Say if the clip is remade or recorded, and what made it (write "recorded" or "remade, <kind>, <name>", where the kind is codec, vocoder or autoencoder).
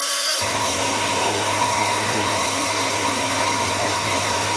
remade, codec, SNAC